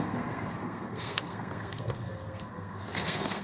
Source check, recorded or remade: remade